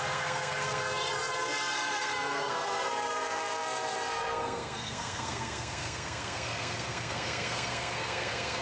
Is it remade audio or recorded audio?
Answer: remade